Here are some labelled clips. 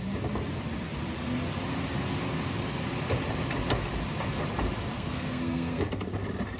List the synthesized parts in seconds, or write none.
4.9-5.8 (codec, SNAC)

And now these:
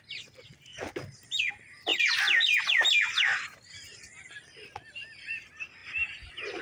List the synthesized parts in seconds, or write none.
none

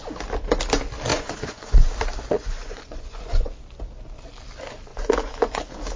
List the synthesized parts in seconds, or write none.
1.1-1.9 (vocoder, Vocos); 2.4-3.5; 4.9-5.6

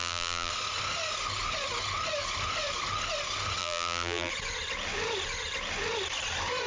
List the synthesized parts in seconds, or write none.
0.0-0.5 (vocoder, BigVGAN v2); 3.6-4.3

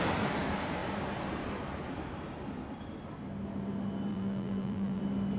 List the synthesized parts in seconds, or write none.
4.1-5.0 (vocoder, BigVGAN v2)

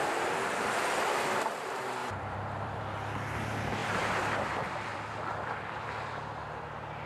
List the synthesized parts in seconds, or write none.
2.0-2.8 (vocoder, BigVGAN v2); 3.8-6.2